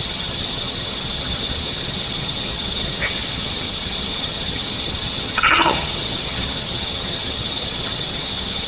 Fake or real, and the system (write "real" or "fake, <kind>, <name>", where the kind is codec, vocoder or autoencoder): fake, vocoder, HiFi-GAN